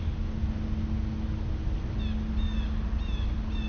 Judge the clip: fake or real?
real